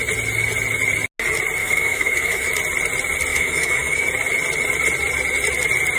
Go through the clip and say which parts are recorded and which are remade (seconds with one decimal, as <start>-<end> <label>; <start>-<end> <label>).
0.0-1.6 recorded; 1.6-2.5 remade; 2.5-3.3 recorded; 3.3-4.1 remade; 4.1-6.0 recorded